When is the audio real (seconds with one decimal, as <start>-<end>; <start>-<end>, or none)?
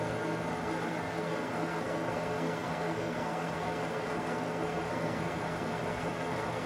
none